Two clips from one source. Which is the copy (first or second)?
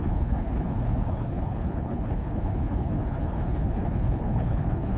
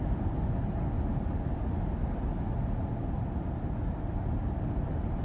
first